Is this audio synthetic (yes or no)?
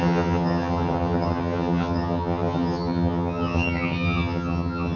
yes